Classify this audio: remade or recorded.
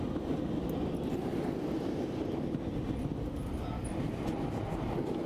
recorded